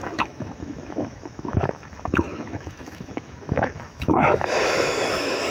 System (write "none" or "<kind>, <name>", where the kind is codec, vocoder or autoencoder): autoencoder, DAC-VAE